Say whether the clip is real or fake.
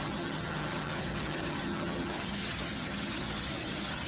fake